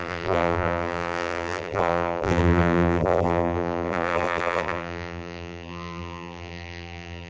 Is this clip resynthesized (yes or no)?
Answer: yes